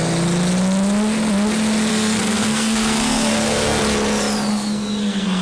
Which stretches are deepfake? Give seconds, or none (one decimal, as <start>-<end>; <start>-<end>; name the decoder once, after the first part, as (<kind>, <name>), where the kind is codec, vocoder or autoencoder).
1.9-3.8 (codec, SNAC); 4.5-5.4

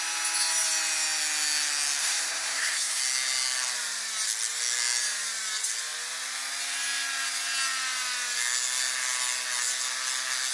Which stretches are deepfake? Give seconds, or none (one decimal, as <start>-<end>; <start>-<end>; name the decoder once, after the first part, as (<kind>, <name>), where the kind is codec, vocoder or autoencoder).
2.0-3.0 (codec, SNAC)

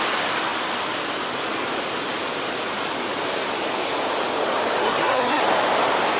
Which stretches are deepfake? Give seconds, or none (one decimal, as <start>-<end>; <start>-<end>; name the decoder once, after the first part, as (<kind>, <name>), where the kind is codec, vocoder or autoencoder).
4.8-5.4 (codec, SNAC)

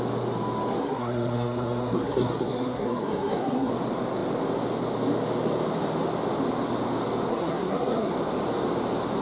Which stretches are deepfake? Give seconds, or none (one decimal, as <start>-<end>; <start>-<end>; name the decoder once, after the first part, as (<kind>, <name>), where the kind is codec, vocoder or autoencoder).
0.8-3.7 (codec, SNAC); 7.3-8.1

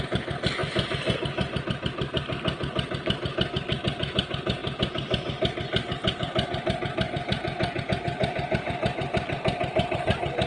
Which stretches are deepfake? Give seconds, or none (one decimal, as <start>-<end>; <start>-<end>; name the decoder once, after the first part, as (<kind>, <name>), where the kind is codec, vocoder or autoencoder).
none

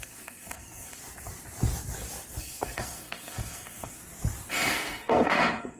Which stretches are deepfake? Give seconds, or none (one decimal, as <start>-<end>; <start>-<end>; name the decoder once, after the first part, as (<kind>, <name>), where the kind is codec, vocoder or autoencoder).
0.0-1.0 (codec, SNAC); 2.4-4.0; 4.5-5.8

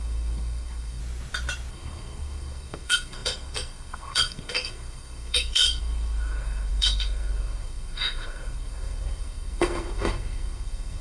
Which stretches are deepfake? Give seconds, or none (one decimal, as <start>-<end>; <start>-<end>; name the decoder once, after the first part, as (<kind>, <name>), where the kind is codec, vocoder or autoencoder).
0.0-1.0 (codec, SNAC); 1.7-11.0